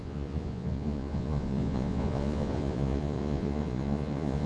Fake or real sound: fake